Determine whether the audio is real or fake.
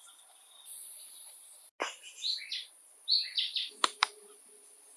real